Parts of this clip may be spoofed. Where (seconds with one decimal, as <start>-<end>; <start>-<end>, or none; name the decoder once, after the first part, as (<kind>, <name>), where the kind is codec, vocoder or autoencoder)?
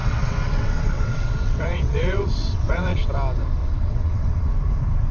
0.0-3.1 (vocoder, WaveNeXt); 3.6-4.5